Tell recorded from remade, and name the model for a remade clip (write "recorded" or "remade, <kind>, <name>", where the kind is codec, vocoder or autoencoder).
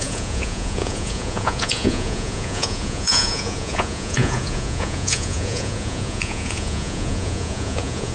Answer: remade, vocoder, Vocos